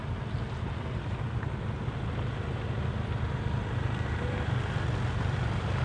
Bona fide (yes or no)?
yes